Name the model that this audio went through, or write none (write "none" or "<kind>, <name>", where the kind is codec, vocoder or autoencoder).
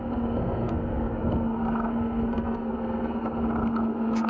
codec, SNAC